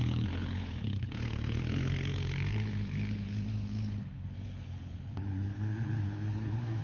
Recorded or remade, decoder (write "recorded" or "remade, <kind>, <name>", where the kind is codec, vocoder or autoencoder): remade, codec, HILCodec